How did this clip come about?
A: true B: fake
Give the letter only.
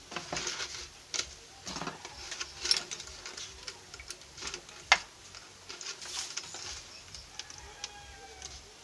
A